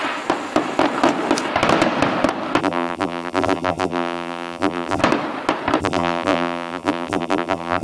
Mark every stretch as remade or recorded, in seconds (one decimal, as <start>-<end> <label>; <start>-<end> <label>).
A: 0.0-2.6 recorded; 2.6-5.0 remade; 5.0-5.8 recorded; 5.8-7.8 remade